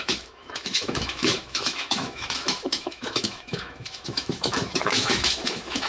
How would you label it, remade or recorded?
remade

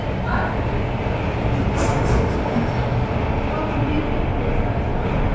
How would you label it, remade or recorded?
recorded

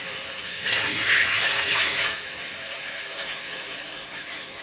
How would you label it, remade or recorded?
remade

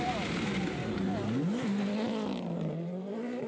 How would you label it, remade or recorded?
recorded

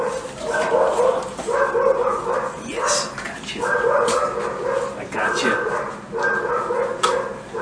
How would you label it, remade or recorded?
recorded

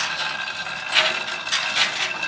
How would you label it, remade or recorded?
recorded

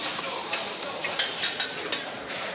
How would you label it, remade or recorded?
recorded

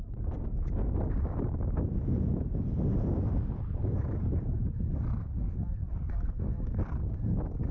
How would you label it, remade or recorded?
recorded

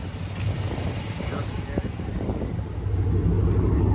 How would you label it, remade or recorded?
recorded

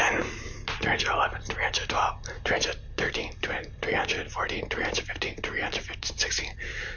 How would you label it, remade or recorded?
recorded